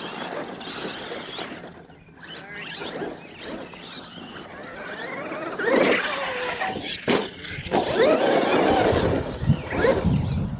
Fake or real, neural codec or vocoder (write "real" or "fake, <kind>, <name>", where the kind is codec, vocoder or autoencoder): real